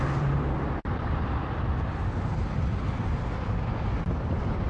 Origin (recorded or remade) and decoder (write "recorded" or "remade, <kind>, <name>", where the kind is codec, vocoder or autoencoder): recorded